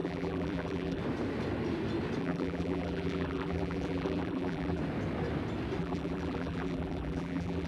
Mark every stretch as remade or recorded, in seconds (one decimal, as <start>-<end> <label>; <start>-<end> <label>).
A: 0.0-1.0 remade; 1.0-2.2 recorded; 2.2-4.8 remade; 4.8-5.8 recorded; 5.8-7.7 remade